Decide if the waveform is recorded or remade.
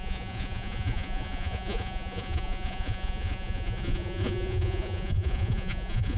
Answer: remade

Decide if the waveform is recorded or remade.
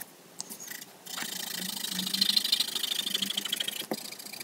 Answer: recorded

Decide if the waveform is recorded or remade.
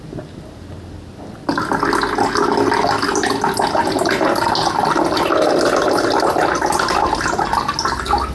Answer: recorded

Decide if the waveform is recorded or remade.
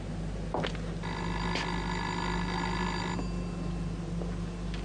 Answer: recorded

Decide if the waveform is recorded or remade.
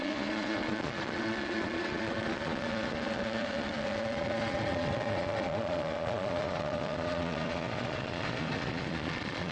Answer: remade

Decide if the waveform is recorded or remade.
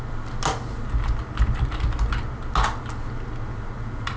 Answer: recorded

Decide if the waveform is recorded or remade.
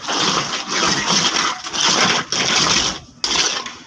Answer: recorded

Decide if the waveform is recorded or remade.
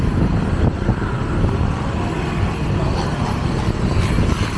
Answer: recorded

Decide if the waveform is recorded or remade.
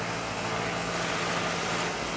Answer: recorded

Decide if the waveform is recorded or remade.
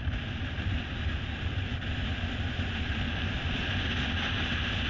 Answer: recorded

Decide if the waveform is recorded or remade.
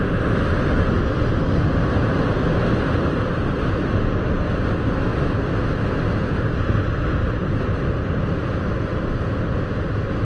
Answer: recorded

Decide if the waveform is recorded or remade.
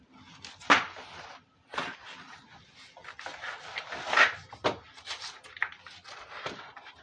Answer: recorded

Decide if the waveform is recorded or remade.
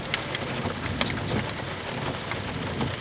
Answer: recorded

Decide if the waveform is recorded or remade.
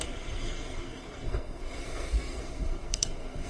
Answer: remade